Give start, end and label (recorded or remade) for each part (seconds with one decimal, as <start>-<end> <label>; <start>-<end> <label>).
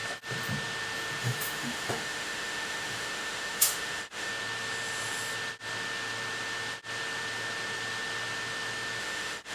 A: 0.0-1.2 recorded; 1.2-4.3 remade; 4.3-9.0 recorded; 9.0-9.5 remade